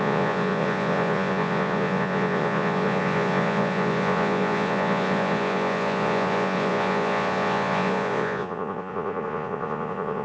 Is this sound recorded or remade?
remade